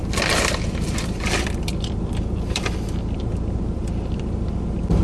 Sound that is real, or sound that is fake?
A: fake